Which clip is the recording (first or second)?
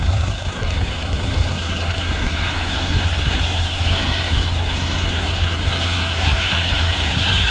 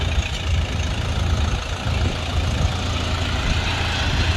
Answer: second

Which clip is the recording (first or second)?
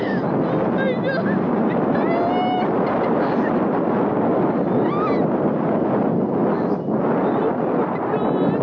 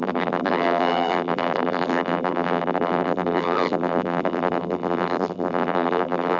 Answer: first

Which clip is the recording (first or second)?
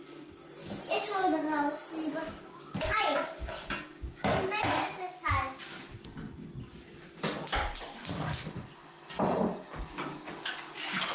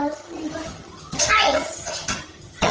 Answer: first